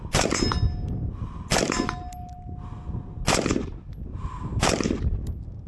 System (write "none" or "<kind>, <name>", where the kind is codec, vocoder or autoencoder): none